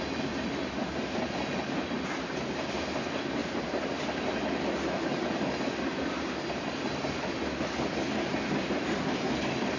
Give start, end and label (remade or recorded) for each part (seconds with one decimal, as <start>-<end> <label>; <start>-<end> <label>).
0.0-3.4 recorded; 3.4-4.0 remade; 4.0-9.8 recorded

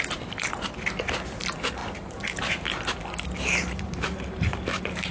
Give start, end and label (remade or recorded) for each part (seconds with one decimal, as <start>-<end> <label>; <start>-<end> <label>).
0.0-1.8 recorded; 1.8-5.1 remade

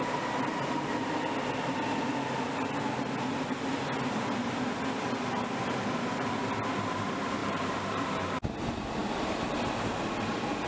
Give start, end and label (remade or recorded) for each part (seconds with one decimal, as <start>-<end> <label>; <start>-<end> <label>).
0.0-7.4 recorded; 7.4-8.0 remade; 8.0-10.7 recorded

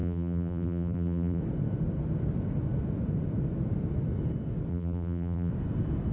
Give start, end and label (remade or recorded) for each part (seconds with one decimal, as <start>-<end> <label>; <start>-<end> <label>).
0.0-1.4 remade; 1.4-4.7 recorded; 4.7-5.5 remade; 5.5-6.1 recorded

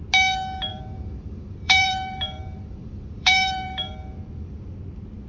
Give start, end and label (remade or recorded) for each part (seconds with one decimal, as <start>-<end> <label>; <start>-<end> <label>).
0.0-0.7 recorded; 0.7-3.9 remade; 3.9-5.3 recorded

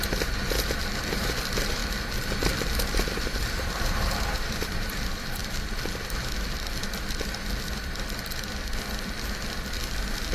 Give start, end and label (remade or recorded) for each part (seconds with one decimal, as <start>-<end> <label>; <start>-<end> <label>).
0.0-1.8 remade; 1.8-2.8 recorded; 2.8-5.4 remade; 5.4-10.3 recorded

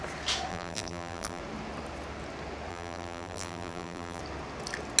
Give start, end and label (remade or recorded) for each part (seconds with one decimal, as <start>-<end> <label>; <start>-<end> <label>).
0.0-0.5 recorded; 0.5-1.4 remade; 1.4-2.7 recorded; 2.7-4.2 remade; 4.2-5.0 recorded

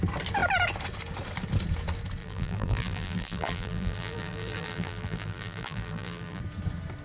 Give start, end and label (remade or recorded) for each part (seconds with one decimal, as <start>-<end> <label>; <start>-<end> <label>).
0.0-2.2 recorded; 2.2-6.4 remade; 6.4-7.0 recorded